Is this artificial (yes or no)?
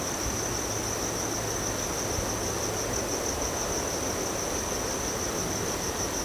no